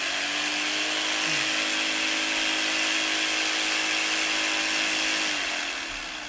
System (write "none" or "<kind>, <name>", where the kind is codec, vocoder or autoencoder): none